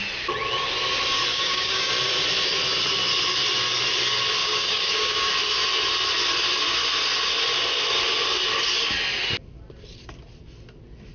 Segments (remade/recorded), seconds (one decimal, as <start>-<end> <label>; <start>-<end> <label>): 0.0-1.3 recorded; 1.3-1.9 remade; 1.9-4.4 recorded; 4.4-5.3 remade; 5.3-11.1 recorded